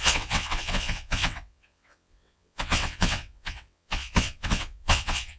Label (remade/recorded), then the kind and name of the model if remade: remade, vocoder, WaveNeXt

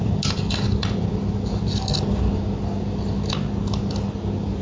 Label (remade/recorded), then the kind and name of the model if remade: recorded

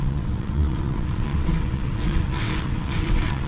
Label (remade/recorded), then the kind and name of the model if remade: remade, vocoder, WaveNeXt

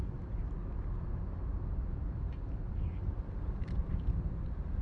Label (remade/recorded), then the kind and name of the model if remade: recorded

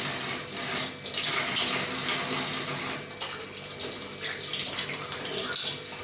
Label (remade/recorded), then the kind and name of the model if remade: recorded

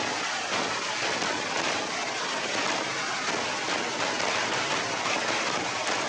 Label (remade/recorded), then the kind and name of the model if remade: recorded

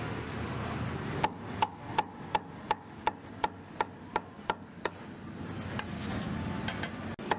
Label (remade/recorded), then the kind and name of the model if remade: recorded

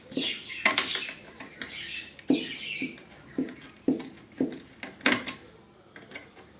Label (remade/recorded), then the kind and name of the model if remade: recorded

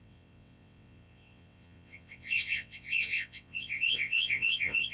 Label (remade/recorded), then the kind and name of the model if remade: remade, vocoder, WaveNeXt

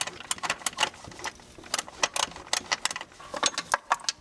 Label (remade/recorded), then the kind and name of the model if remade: recorded